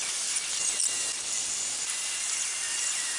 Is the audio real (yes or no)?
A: yes